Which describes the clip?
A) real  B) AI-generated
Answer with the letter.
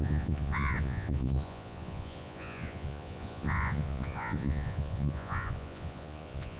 B